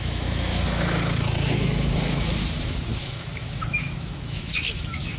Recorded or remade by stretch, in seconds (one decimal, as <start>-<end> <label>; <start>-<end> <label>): 0.0-2.4 remade; 2.4-3.0 recorded; 3.0-5.2 remade